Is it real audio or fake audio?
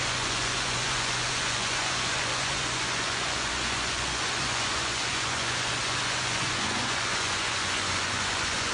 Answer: fake